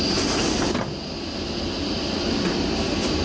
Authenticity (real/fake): real